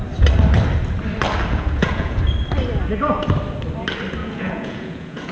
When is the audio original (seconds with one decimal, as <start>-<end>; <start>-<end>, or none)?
0.0-1.5; 2.2-4.2